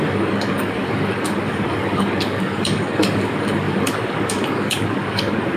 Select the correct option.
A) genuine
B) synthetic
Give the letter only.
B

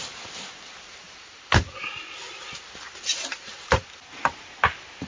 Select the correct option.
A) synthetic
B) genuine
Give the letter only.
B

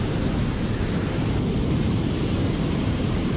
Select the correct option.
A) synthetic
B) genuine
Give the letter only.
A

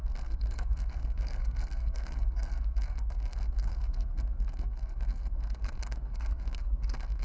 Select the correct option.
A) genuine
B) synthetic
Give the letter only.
B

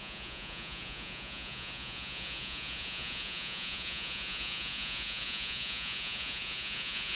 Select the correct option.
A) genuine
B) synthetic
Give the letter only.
B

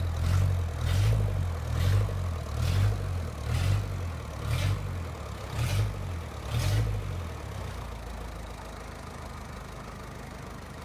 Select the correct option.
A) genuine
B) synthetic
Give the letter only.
A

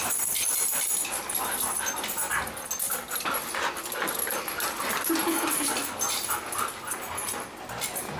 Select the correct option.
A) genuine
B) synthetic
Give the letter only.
A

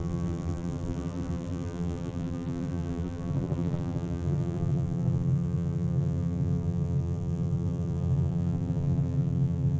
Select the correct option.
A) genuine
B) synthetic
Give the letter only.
B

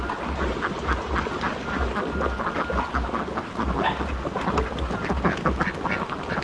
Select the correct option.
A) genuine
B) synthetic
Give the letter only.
A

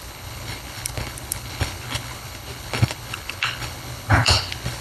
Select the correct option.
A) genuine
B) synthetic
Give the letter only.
B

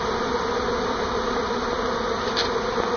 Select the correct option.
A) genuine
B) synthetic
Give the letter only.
A